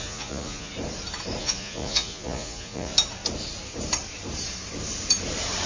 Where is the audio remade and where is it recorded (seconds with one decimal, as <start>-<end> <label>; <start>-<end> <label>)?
0.0-0.7 remade; 0.7-1.4 recorded; 1.4-2.9 remade; 2.9-5.7 recorded